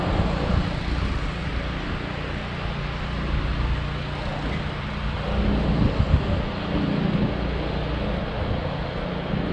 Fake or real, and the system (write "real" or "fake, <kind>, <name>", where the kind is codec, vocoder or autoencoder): real